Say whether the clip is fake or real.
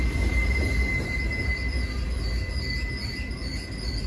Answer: real